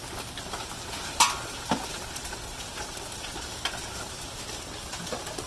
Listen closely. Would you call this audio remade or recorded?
recorded